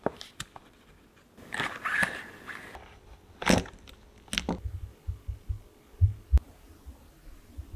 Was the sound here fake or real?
real